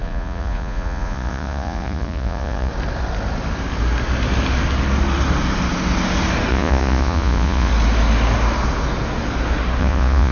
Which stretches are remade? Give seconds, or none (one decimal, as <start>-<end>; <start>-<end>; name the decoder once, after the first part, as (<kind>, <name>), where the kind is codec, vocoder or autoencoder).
0.0-2.7 (vocoder, Vocos); 6.5-7.7; 9.8-10.3